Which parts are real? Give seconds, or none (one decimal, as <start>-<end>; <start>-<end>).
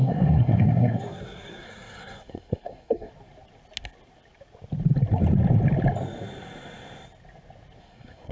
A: 3.1-7.8